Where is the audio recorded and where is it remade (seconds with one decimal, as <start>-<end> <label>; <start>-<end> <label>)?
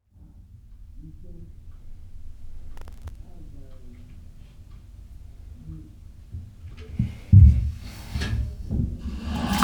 0.0-7.6 recorded; 7.6-8.7 remade; 8.7-9.6 recorded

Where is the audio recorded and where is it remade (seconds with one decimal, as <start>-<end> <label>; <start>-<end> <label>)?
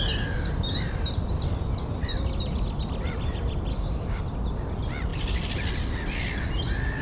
0.0-3.7 recorded; 3.7-4.2 remade; 4.2-7.0 recorded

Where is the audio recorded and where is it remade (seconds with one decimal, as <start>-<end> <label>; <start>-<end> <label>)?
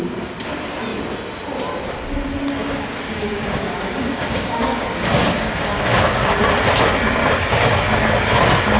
0.0-2.6 recorded; 2.6-6.4 remade; 6.4-7.2 recorded; 7.2-8.0 remade; 8.0-8.8 recorded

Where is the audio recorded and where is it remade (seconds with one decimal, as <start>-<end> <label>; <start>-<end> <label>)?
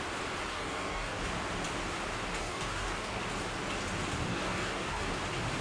0.0-0.5 recorded; 0.5-1.2 remade; 1.2-2.4 recorded; 2.4-3.2 remade; 3.2-4.3 recorded; 4.3-5.1 remade; 5.1-5.6 recorded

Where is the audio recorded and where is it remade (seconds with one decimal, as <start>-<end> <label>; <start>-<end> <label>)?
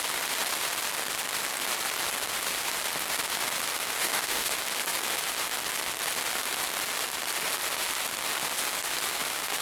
0.0-4.0 recorded; 4.0-4.5 remade; 4.5-9.6 recorded